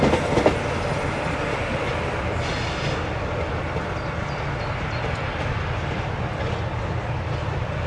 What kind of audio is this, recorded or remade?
recorded